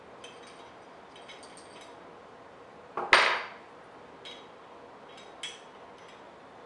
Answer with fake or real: real